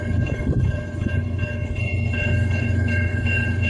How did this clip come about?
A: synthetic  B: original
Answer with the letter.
A